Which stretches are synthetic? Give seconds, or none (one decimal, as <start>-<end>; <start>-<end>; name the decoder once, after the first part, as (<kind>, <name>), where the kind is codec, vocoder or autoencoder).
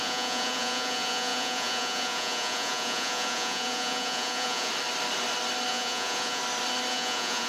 0.0-4.7 (vocoder, Vocos); 5.7-6.4; 6.9-7.5